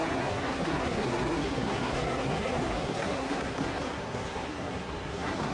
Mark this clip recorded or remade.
remade